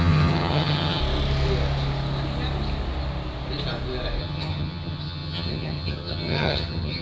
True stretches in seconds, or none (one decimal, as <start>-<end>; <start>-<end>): 1.0-4.2